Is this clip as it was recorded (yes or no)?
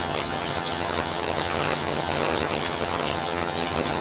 no